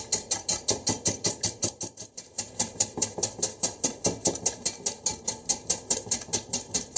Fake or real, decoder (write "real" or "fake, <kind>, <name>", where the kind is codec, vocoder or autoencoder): real